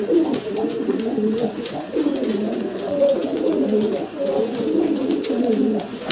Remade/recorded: remade